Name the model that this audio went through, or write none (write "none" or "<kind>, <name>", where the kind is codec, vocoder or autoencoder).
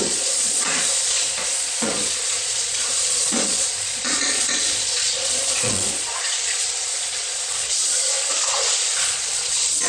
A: vocoder, Vocos